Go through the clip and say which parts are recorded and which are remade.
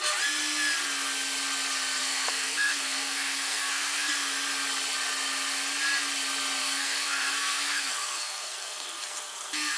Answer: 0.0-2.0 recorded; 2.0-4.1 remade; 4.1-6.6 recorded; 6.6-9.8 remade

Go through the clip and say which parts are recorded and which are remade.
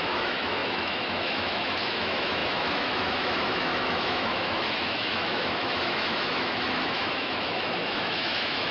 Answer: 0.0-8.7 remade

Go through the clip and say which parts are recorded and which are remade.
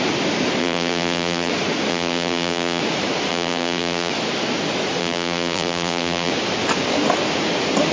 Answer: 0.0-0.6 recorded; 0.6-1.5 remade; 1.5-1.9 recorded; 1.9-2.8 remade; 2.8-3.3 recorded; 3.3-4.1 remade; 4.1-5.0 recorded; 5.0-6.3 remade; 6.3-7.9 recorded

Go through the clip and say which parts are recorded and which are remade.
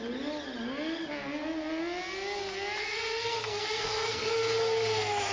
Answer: 0.0-2.8 recorded; 2.8-4.3 remade; 4.3-5.3 recorded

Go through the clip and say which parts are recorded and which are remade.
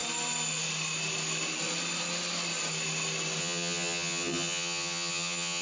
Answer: 0.0-3.4 recorded; 3.4-5.6 remade